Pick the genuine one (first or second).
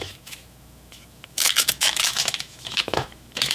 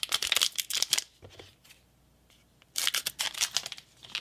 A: second